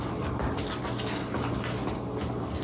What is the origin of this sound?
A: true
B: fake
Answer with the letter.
A